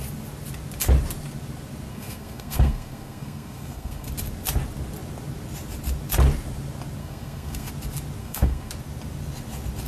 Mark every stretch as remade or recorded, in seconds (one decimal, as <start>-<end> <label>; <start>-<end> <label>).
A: 0.0-1.9 recorded; 1.9-4.1 remade; 4.1-7.0 recorded; 7.0-7.7 remade; 7.7-8.2 recorded; 8.2-8.7 remade; 8.7-9.9 recorded